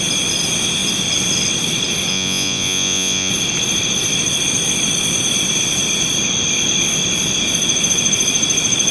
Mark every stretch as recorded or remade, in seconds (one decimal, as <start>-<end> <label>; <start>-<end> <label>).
0.0-2.1 recorded; 2.1-3.3 remade; 3.3-8.9 recorded